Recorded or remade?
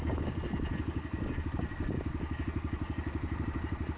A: recorded